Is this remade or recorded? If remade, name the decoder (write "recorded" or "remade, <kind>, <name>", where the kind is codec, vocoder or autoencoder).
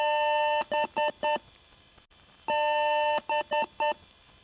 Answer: recorded